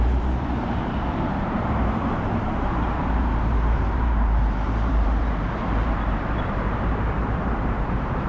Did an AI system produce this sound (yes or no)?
yes